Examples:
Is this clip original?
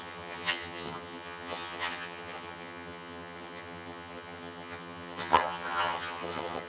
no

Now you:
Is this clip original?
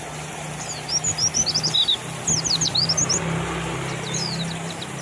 yes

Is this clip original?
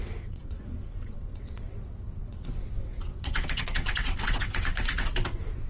no